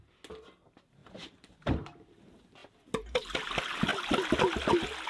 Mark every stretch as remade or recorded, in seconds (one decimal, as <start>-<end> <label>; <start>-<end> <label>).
0.0-1.0 recorded; 1.0-2.1 remade; 2.1-5.1 recorded